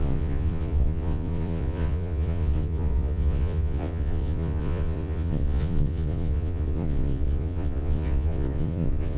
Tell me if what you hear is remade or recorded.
remade